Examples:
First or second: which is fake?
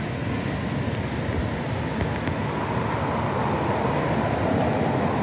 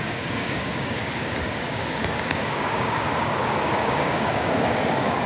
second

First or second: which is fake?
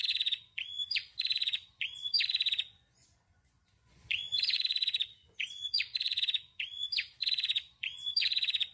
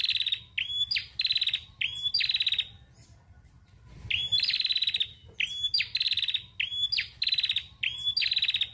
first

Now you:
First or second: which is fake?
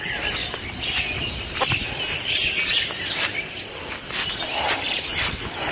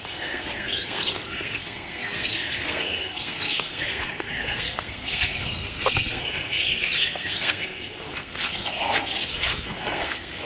second